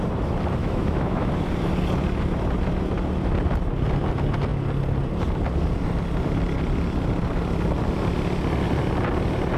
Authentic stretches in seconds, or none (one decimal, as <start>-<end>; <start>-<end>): 0.0-0.6; 1.3-9.6